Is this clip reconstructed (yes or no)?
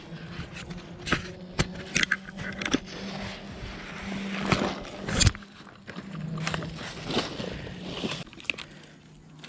no